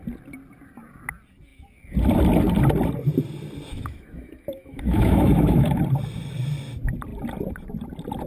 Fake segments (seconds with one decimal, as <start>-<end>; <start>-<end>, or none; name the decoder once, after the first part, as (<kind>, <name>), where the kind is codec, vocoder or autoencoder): 3.7-5.8 (autoencoder, DAC-VAE)